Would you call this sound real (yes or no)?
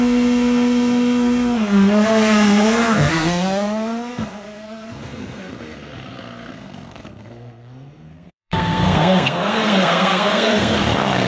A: no